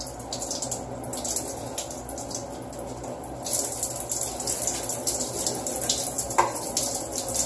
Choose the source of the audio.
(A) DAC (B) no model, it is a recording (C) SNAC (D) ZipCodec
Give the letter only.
B